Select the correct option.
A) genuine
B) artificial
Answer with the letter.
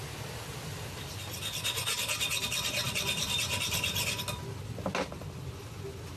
A